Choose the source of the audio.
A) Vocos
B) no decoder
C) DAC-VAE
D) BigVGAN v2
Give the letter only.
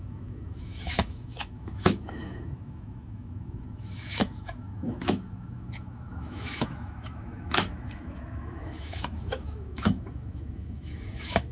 C